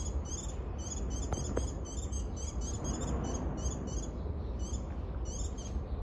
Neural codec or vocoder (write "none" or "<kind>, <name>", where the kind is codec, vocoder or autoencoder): none